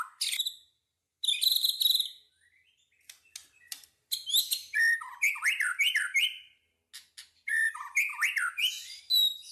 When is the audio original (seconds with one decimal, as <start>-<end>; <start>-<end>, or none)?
0.0-9.5